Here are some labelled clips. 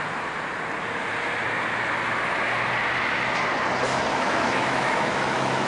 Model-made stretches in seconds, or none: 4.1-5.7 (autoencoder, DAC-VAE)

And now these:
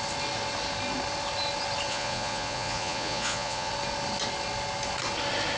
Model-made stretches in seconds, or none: 1.9-3.7 (vocoder, Vocos)

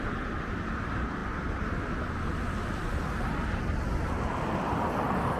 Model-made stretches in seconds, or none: none

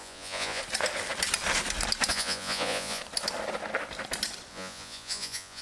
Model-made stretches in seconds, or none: 0.0-0.6 (vocoder, Vocos); 2.1-3.0; 4.5-5.6

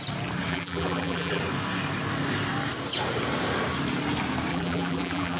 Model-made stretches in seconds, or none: 0.5-1.4 (vocoder, BigVGAN v2); 4.5-5.4

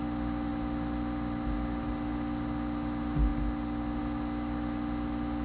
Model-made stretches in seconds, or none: none